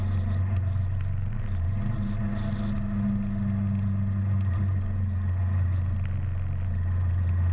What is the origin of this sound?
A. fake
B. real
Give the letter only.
B